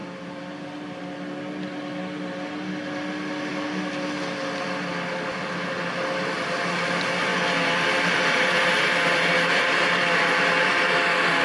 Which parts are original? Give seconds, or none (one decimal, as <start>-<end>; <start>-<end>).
0.0-7.3; 10.9-11.4